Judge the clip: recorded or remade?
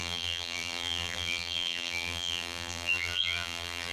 remade